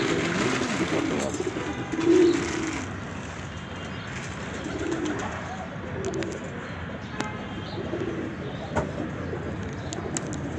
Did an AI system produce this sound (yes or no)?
no